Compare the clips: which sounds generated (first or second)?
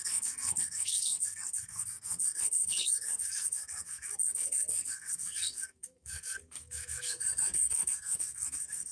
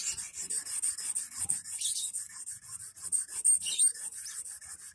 first